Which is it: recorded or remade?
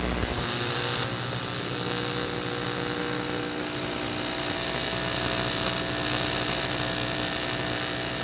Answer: recorded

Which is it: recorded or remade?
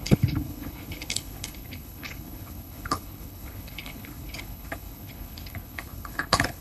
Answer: remade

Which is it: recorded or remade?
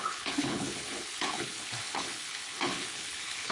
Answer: remade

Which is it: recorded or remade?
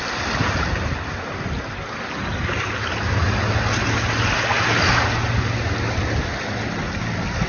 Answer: recorded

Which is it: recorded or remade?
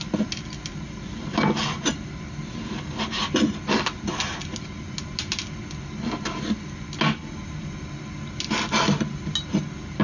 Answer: recorded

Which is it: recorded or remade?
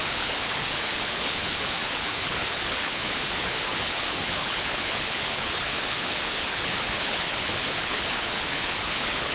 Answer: remade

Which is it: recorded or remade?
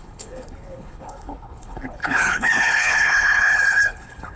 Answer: remade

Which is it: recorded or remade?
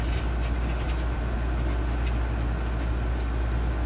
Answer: recorded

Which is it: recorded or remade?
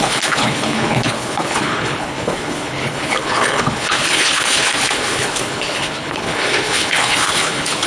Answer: remade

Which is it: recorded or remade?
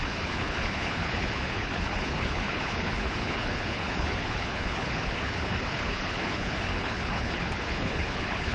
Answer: remade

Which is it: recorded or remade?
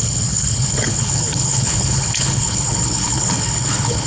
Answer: remade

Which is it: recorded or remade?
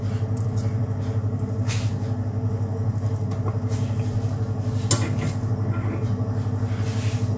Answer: recorded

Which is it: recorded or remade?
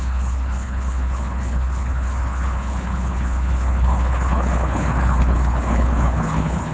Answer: remade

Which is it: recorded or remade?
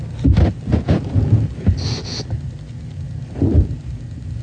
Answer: recorded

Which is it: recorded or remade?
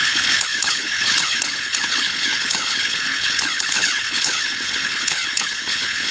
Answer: remade